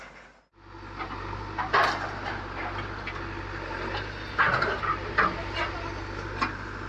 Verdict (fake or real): real